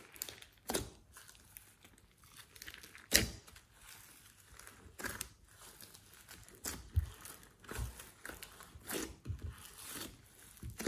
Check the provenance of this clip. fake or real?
real